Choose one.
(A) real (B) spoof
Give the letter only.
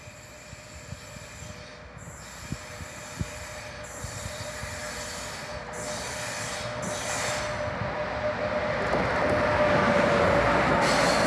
A